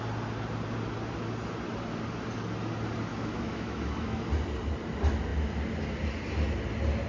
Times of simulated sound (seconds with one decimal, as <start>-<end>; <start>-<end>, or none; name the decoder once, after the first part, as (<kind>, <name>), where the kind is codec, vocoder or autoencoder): 3.1-4.2 (autoencoder, DAC-VAE)